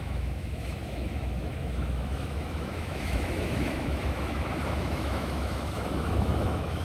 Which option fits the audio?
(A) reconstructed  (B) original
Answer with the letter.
A